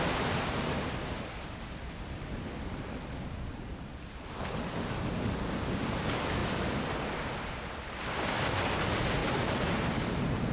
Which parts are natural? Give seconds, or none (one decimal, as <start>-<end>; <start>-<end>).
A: 0.0-9.2

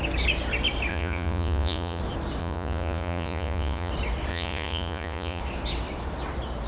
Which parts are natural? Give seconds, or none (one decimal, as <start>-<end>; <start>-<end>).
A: 0.0-0.9; 2.0-2.4; 3.9-4.3; 5.4-6.7

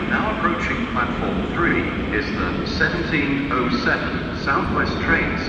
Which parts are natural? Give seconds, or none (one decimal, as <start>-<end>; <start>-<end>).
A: 0.0-5.5

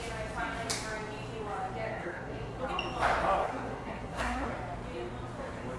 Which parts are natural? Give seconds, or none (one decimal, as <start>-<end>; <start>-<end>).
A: 0.0-1.9; 2.6-3.4; 4.5-5.8